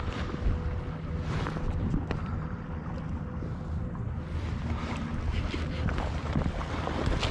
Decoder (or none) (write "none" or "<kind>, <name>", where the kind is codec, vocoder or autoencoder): none